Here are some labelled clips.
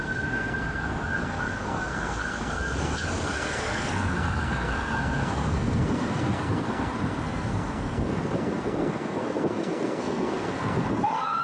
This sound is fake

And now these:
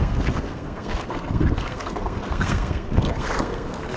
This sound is fake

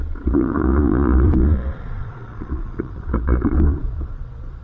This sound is fake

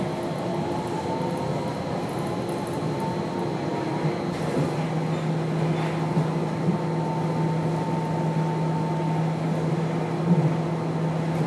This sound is real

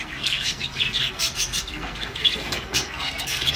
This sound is fake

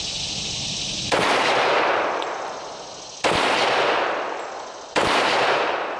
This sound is real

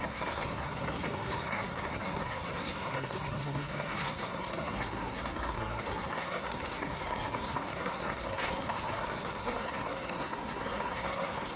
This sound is fake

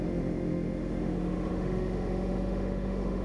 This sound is fake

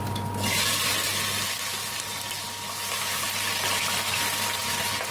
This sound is real